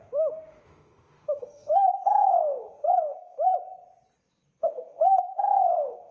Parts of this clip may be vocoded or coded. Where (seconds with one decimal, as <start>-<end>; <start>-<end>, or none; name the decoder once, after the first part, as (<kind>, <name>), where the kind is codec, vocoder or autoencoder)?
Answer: 0.0-3.5 (autoencoder, DAC-VAE); 4.6-6.1